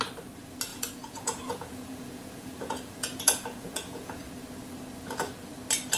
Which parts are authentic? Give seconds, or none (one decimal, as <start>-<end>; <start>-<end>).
0.0-0.7; 4.3-6.0